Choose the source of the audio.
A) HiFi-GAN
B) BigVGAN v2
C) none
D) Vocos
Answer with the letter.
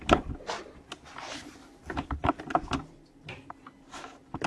C